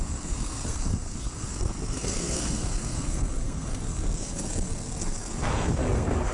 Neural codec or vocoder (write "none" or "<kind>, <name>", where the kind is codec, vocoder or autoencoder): codec, SNAC